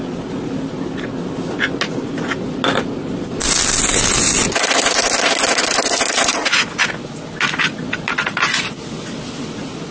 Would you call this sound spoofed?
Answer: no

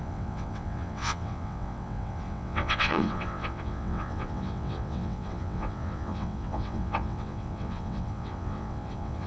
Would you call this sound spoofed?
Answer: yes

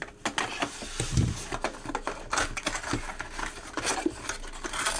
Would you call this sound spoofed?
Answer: no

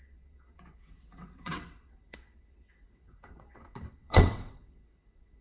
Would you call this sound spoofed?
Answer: yes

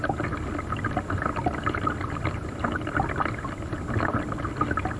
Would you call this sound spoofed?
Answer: no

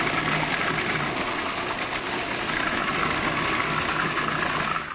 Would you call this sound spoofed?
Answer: no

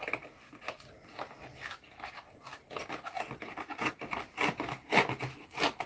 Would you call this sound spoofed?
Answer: no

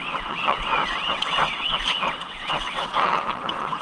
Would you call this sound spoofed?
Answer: yes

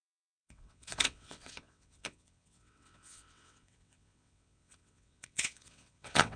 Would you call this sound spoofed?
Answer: yes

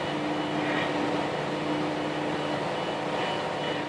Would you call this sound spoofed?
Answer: no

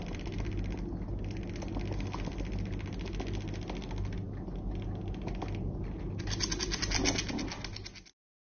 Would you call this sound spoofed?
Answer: no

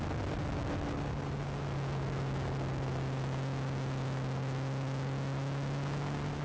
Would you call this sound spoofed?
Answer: no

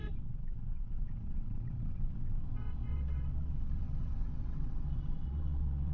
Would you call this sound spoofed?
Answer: yes